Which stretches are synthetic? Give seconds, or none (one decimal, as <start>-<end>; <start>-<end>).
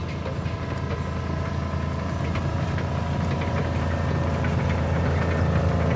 none